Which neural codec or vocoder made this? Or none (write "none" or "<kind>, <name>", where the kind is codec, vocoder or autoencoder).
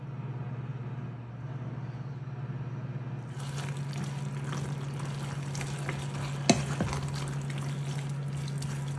none